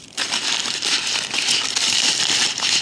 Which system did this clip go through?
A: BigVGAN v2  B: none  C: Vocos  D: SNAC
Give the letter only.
B